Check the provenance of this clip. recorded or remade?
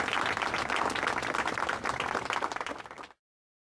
recorded